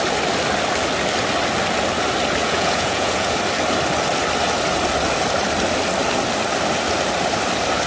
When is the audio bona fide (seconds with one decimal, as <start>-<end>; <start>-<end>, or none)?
0.0-2.4; 3.3-7.9